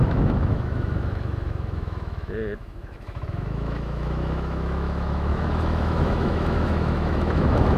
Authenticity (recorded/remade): remade